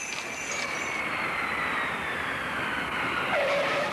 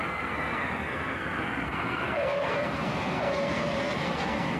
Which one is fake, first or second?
second